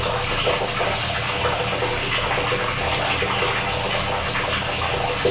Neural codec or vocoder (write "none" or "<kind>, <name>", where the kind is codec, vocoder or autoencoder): none